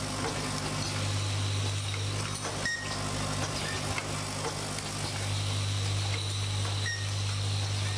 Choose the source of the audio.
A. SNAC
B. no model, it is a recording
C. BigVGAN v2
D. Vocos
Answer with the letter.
B